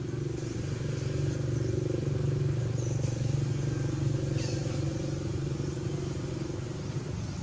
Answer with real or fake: real